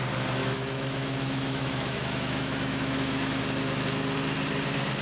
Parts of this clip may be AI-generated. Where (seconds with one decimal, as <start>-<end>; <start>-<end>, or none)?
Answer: 0.4-3.4